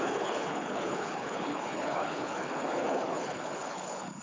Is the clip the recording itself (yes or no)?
no